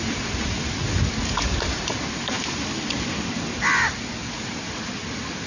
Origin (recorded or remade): recorded